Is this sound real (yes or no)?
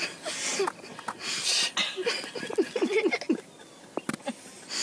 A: yes